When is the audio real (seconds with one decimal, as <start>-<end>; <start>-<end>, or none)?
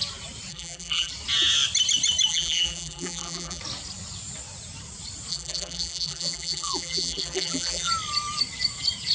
0.0-0.5; 1.1-2.3; 3.6-5.3; 7.9-9.1